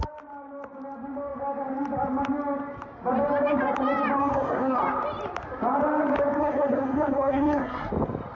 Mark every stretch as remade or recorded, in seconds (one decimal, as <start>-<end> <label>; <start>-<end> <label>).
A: 0.0-4.2 recorded; 4.2-4.8 remade; 4.8-6.4 recorded; 6.4-7.9 remade; 7.9-8.4 recorded